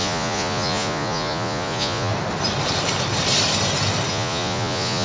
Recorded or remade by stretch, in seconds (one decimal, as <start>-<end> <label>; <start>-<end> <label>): 0.0-2.1 remade; 2.1-4.1 recorded; 4.1-5.0 remade